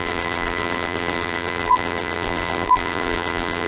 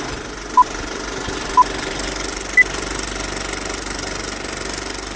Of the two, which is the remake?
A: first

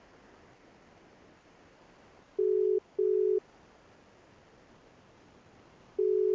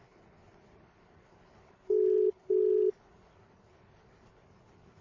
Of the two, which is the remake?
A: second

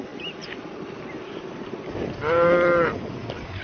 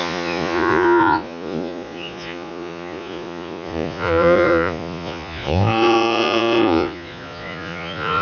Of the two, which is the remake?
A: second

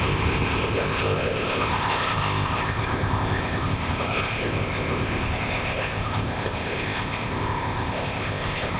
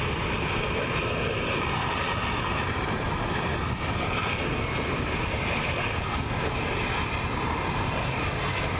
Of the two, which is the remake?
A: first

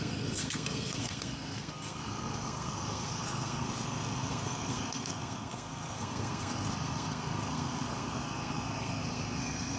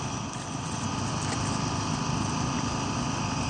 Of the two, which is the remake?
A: first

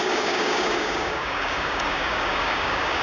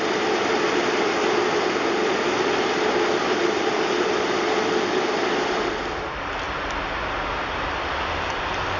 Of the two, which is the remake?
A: first